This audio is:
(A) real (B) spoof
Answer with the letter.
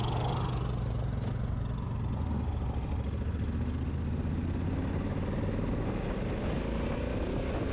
A